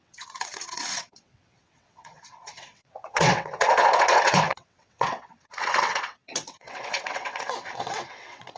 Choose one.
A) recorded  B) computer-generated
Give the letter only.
B